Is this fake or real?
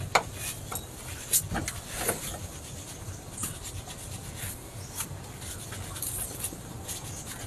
real